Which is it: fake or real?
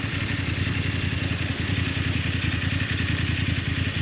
real